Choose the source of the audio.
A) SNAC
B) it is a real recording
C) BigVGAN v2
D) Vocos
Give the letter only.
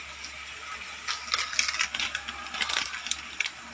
B